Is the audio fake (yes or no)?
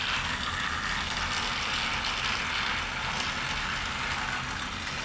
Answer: no